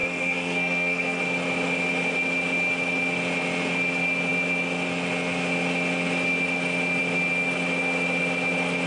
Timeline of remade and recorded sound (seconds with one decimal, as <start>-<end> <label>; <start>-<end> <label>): 0.0-1.2 remade; 1.2-8.9 recorded

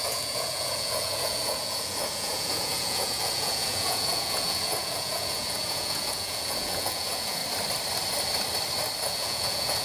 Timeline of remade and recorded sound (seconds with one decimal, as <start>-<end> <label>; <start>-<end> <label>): 0.0-7.4 remade; 7.4-9.1 recorded; 9.1-9.8 remade

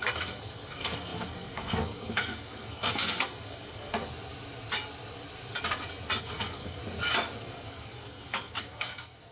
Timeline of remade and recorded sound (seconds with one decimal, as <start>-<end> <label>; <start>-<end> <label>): 0.0-4.1 remade; 4.1-6.2 recorded; 6.2-6.8 remade; 6.8-7.4 recorded; 7.4-9.3 remade